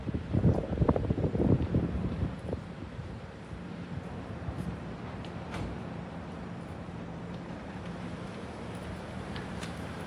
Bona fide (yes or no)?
no